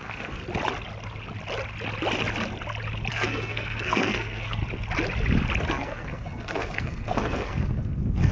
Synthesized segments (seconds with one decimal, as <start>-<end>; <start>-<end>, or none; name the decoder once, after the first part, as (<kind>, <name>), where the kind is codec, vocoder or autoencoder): 0.0-0.4 (codec, SNAC); 3.1-4.6; 5.7-8.3